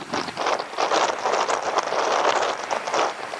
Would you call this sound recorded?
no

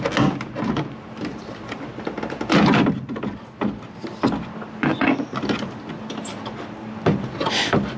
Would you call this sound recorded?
yes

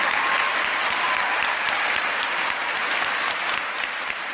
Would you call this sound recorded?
no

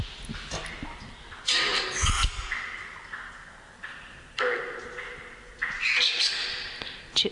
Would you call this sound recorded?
yes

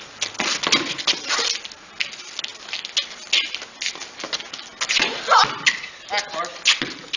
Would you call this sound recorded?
yes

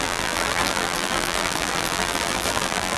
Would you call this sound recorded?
no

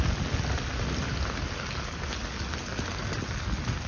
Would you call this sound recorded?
yes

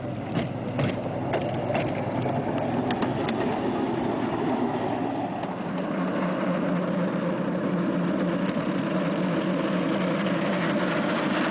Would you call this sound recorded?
yes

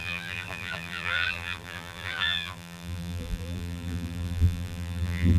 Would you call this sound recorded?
no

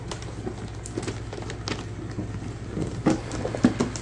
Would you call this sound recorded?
yes